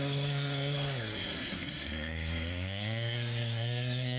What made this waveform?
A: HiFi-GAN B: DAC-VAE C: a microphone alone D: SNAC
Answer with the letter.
D